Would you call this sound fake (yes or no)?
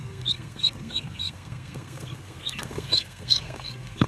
yes